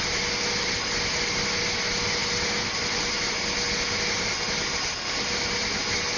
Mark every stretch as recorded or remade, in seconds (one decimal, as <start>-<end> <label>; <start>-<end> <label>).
0.0-6.2 recorded